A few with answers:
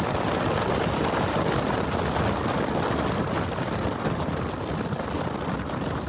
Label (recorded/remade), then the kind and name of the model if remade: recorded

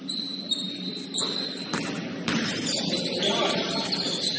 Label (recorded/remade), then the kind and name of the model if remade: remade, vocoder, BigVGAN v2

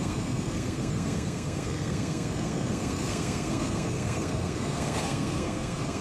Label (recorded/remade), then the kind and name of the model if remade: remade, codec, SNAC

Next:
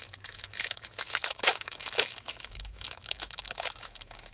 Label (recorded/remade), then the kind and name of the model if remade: remade, autoencoder, DAC-VAE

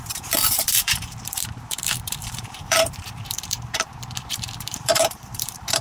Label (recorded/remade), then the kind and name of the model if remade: remade, vocoder, BigVGAN v2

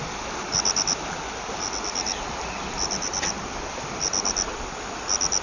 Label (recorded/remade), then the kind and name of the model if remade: recorded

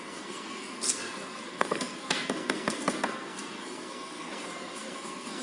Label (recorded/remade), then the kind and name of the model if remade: remade, codec, SNAC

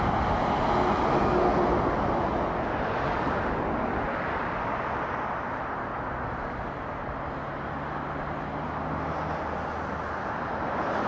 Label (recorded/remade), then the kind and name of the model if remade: recorded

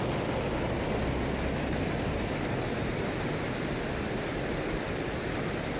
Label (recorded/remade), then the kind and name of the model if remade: recorded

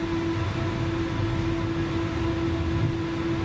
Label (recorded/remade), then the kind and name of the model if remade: recorded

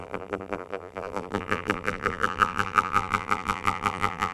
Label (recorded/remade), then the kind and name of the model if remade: remade, vocoder, BigVGAN v2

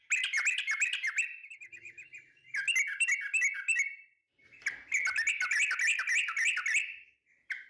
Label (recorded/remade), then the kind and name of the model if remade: recorded